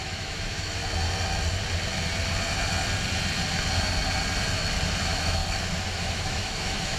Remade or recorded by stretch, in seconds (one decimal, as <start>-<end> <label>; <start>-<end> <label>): 0.0-0.8 remade; 0.8-5.0 recorded; 5.0-5.4 remade; 5.4-6.0 recorded; 6.0-7.0 remade